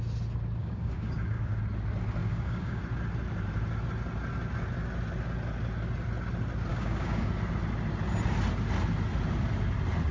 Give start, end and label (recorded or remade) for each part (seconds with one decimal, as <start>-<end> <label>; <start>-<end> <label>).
0.0-0.6 recorded; 0.6-1.6 remade; 1.6-2.2 recorded; 2.2-2.8 remade; 2.8-6.7 recorded; 6.7-7.3 remade; 7.3-10.1 recorded